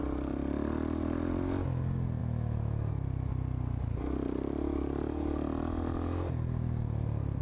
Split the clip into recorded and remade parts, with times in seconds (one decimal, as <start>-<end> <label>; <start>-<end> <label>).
0.0-2.2 recorded; 2.2-2.9 remade; 2.9-7.4 recorded

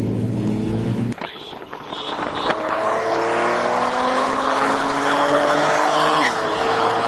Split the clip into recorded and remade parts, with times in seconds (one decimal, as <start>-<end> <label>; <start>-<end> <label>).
0.0-1.9 remade; 1.9-2.6 recorded; 2.6-3.2 remade; 3.2-3.9 recorded; 3.9-7.1 remade

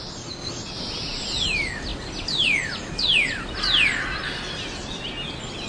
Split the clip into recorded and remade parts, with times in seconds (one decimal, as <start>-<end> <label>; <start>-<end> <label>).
0.0-5.7 recorded

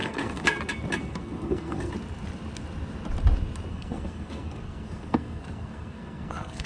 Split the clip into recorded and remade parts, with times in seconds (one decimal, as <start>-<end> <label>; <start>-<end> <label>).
0.0-0.6 remade; 0.6-1.0 recorded; 1.0-1.9 remade; 1.9-3.7 recorded; 3.7-6.7 remade

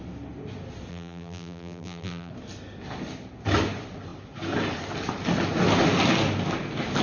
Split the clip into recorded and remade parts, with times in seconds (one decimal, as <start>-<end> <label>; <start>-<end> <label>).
0.0-0.9 recorded; 0.9-2.3 remade; 2.3-7.0 recorded

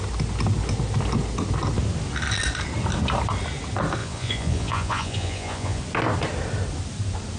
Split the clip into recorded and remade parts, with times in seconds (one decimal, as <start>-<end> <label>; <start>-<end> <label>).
0.0-4.0 recorded; 4.0-5.8 remade; 5.8-7.4 recorded